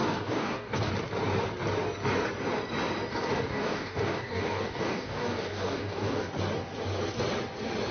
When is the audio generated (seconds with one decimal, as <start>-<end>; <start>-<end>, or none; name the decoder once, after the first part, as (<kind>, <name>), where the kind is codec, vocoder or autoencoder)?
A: 0.0-0.9 (codec, DAC); 3.1-6.3